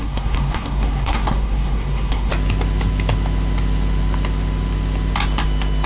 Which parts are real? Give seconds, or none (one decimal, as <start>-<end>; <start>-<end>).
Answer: 2.3-5.9